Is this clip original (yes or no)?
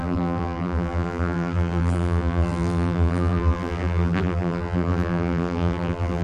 no